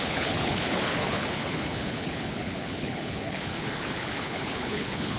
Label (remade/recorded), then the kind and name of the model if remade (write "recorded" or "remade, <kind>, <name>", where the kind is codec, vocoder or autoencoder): remade, codec, HILCodec